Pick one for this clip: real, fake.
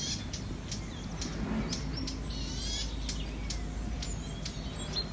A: real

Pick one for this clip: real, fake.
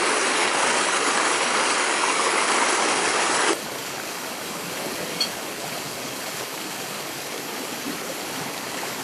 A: fake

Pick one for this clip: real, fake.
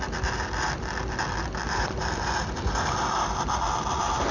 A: real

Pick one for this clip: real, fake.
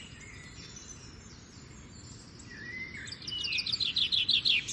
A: real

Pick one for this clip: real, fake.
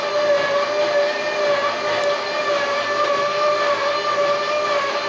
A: real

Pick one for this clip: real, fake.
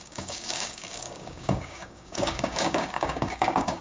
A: fake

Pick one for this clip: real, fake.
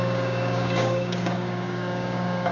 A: fake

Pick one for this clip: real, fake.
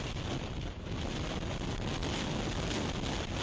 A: real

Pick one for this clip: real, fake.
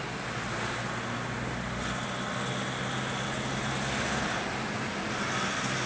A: real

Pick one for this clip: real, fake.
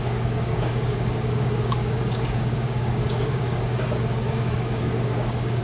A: fake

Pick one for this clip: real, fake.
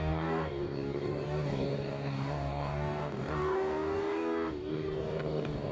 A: fake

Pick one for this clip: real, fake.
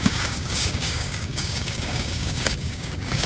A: fake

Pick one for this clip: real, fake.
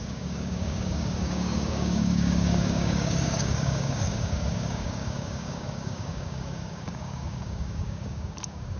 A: fake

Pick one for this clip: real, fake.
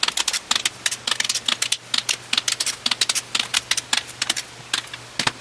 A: real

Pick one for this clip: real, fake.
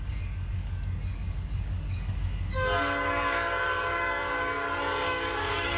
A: fake